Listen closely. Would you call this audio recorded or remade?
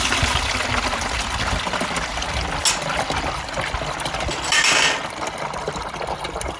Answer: recorded